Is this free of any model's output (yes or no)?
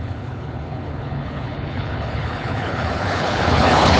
no